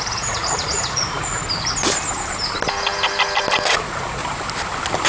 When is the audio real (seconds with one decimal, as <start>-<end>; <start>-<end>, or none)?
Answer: 1.4-3.7; 4.2-5.1